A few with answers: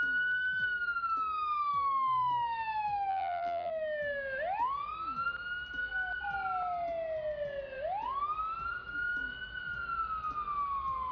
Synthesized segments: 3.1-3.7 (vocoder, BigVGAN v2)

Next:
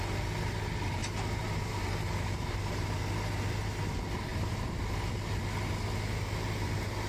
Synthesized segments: 1.0-2.9 (vocoder, BigVGAN v2); 4.3-4.8

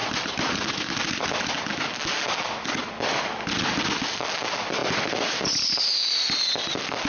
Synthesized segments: 0.0-2.8 (vocoder, BigVGAN v2); 4.0-7.1

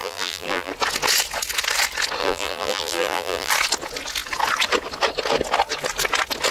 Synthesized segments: 0.0-0.7 (vocoder, BigVGAN v2); 2.2-3.5